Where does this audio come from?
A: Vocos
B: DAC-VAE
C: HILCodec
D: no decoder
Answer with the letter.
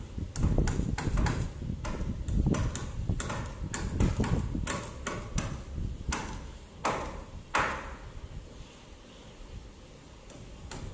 D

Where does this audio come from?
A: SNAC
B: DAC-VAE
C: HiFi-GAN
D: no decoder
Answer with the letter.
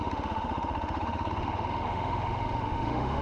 B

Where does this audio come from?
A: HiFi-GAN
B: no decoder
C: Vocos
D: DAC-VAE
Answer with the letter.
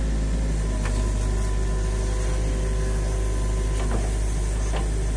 B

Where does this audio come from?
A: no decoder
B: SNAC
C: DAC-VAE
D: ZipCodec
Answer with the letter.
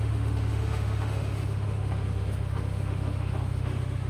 C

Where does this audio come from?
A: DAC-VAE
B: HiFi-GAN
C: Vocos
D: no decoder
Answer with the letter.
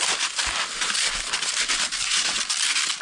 D